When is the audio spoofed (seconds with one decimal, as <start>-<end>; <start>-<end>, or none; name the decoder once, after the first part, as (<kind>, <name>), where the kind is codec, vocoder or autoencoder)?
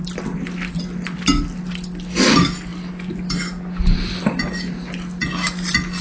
none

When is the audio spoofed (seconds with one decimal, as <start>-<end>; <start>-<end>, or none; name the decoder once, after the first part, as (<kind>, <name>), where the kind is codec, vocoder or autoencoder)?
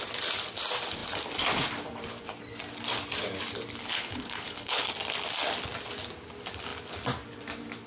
3.8-4.9 (codec, HILCodec)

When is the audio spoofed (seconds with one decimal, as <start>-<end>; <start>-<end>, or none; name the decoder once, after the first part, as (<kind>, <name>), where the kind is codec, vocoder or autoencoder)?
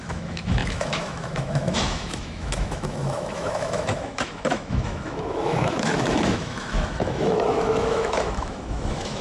0.0-9.2 (autoencoder, DAC-VAE)